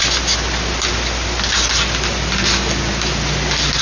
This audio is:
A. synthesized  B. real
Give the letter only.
B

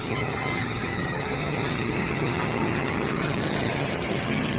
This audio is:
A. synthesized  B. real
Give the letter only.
A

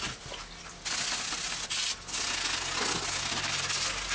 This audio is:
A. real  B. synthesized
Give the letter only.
A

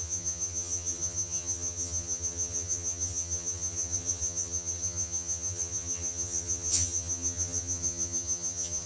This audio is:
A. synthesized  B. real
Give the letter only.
A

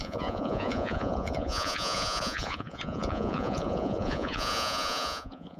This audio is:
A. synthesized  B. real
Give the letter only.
A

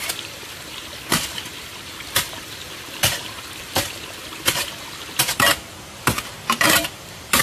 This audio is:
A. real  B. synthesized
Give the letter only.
B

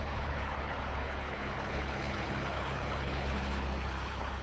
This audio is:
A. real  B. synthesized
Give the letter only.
B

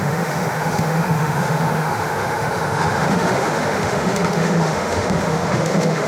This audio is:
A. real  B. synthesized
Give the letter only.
B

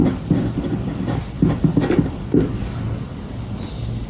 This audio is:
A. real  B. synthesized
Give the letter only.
A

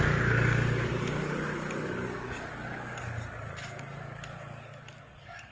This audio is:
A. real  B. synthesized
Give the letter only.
B